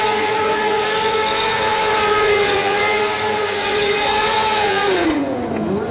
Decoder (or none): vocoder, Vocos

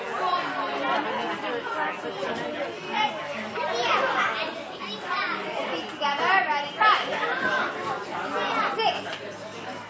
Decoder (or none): none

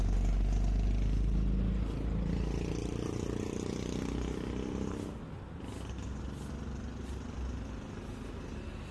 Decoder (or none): none